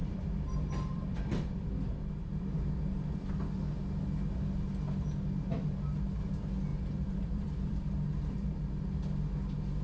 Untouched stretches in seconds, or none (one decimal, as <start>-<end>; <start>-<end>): 3.3-6.7; 8.5-9.8